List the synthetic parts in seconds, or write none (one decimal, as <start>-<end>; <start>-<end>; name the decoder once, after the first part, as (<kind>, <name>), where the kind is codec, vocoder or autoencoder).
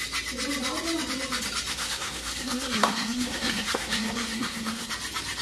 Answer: 1.7-4.9 (codec, SNAC)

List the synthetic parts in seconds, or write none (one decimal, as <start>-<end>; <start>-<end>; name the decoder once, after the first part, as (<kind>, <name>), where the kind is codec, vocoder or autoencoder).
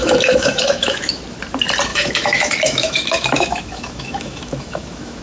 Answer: 0.0-1.2 (autoencoder, DAC-VAE); 1.9-5.2